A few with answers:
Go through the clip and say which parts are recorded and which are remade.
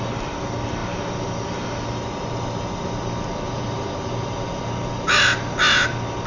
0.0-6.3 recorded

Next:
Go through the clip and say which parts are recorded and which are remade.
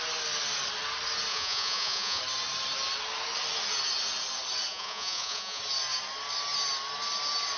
0.0-1.3 recorded; 1.3-2.2 remade; 2.2-4.7 recorded; 4.7-5.6 remade; 5.6-7.6 recorded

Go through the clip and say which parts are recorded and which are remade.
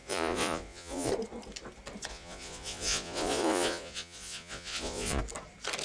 0.0-1.1 remade; 1.1-2.1 recorded; 2.1-5.2 remade; 5.2-5.8 recorded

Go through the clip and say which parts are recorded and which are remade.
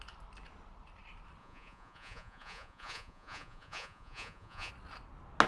0.0-1.4 recorded; 1.4-4.7 remade; 4.7-5.5 recorded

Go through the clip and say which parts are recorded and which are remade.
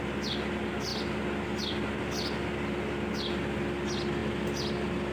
0.0-5.1 recorded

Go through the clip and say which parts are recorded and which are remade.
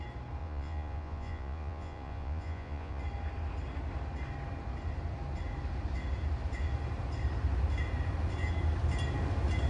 0.0-0.4 recorded; 0.4-3.0 remade; 3.0-9.7 recorded